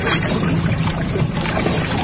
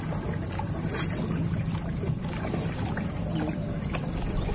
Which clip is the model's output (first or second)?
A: first